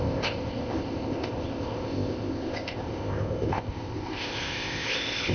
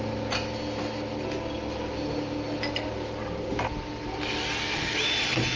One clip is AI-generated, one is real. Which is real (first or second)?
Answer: second